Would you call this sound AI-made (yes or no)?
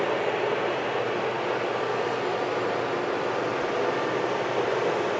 no